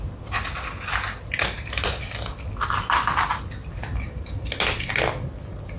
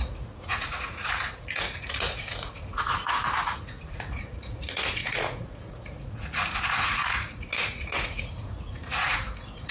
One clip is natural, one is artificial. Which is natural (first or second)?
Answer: first